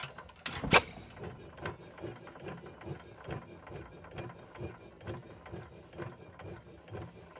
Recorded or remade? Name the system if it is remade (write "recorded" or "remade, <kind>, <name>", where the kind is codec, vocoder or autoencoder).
recorded